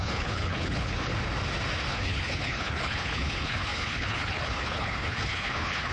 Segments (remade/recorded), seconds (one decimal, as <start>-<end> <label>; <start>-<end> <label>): 0.0-1.1 remade; 1.1-1.9 recorded; 1.9-5.9 remade

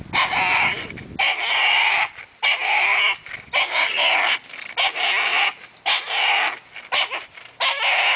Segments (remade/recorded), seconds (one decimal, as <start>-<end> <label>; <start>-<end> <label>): 0.0-1.3 recorded; 1.3-3.4 remade; 3.4-5.3 recorded; 5.3-6.3 remade; 6.3-8.2 recorded

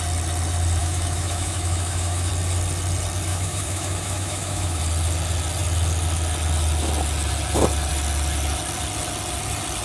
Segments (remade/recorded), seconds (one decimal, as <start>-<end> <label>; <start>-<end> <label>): 0.0-0.8 recorded; 0.8-2.3 remade; 2.3-3.3 recorded; 3.3-4.8 remade; 4.8-9.8 recorded

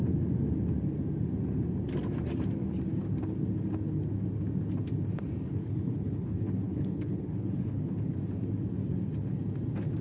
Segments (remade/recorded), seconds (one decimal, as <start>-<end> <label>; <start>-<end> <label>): 0.0-5.5 recorded; 5.5-8.2 remade; 8.2-8.8 recorded; 8.8-9.4 remade; 9.4-10.0 recorded

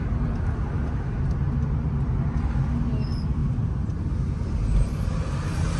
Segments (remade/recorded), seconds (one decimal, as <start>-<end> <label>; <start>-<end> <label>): 0.0-5.8 recorded